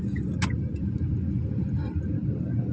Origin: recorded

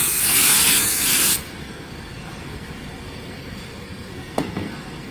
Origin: remade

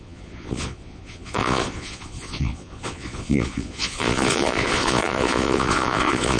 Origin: remade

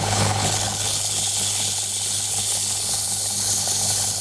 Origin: remade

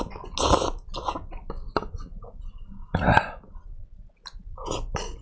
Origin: recorded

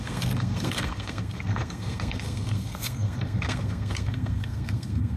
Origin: remade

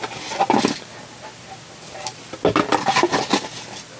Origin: recorded